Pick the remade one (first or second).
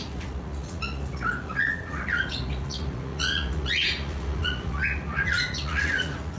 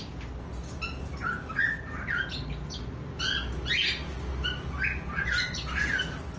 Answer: first